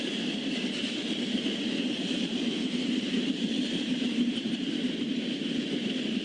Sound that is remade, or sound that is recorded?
remade